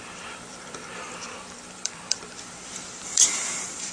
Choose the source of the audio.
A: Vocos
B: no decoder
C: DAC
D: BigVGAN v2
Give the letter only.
D